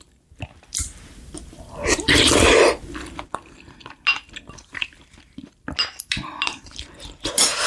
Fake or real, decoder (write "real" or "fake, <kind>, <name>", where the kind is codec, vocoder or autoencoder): real